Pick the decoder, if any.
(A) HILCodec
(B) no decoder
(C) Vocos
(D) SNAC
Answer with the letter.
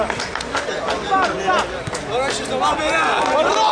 B